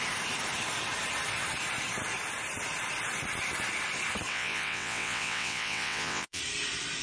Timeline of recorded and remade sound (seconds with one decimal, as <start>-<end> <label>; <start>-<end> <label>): 0.0-4.3 recorded; 4.3-6.4 remade; 6.4-7.0 recorded